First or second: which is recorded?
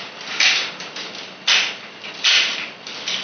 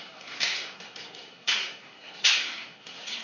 first